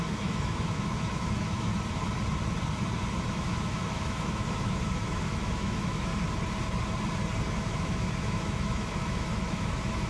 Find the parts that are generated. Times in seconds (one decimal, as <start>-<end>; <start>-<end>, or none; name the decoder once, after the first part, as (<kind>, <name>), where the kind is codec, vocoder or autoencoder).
0.0-1.7 (autoencoder, DAC-VAE); 3.3-6.1; 7.5-10.1